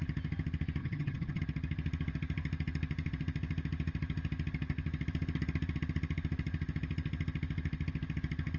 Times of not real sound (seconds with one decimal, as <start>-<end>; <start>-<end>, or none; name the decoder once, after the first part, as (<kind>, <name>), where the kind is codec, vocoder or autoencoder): 0.8-1.4 (vocoder, HiFi-GAN)